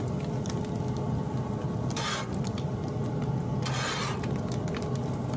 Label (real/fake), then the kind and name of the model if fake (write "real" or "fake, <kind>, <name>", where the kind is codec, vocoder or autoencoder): real